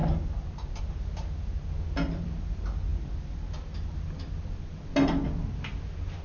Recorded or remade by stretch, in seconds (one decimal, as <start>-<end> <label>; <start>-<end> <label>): 0.0-6.2 recorded